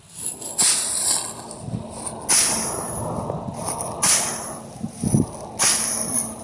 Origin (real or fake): real